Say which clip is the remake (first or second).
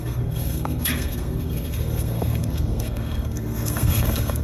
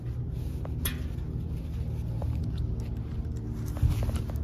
first